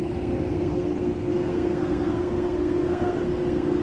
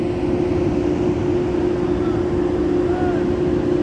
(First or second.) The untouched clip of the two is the second